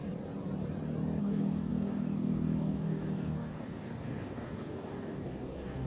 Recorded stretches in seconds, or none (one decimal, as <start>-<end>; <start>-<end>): 0.0-1.2